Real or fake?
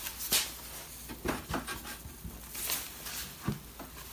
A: real